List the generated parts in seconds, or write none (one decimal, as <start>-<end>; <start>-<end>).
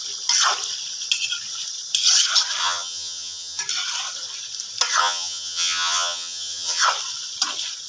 2.6-3.6; 5.0-6.8